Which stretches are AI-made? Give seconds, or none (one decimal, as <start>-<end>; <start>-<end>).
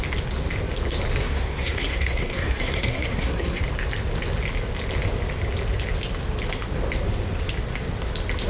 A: 1.2-3.6